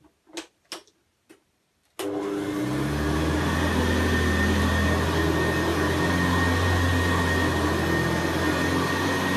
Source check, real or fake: real